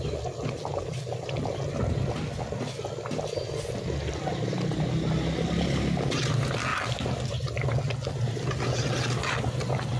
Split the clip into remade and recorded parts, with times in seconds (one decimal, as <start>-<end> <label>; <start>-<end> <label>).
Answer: 0.0-10.0 recorded